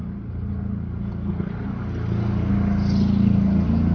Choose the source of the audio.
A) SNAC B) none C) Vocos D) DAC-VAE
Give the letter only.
B